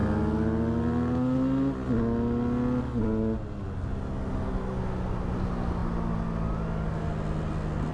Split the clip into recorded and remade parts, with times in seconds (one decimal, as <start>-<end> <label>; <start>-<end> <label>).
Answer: 0.0-7.9 recorded